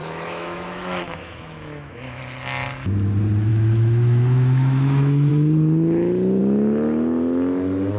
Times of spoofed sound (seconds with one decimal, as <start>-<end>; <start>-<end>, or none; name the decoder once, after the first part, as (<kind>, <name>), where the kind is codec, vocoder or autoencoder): 0.0-2.2 (autoencoder, DAC-VAE); 3.5-5.3